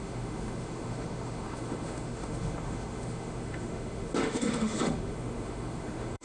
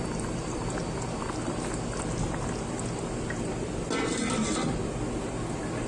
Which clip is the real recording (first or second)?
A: second